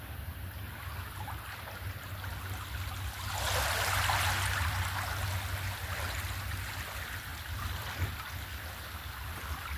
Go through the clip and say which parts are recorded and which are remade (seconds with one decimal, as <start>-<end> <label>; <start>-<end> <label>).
0.0-9.8 recorded